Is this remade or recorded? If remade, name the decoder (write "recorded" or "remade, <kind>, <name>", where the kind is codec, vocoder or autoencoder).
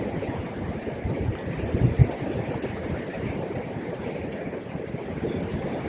recorded